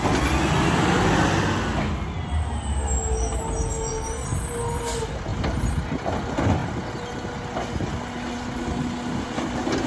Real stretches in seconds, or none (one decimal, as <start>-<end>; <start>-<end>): 0.0-9.9